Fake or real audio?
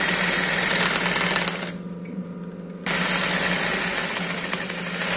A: real